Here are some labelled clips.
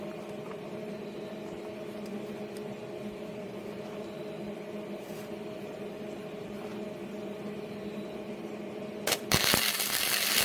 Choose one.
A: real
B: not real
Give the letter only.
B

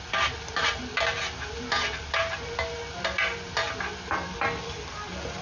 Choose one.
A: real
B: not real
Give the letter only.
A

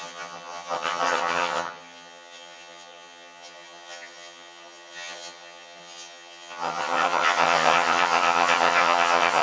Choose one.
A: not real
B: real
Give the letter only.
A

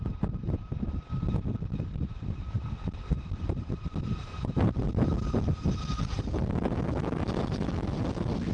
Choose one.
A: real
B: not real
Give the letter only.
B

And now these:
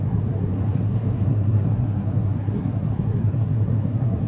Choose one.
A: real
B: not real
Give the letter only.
B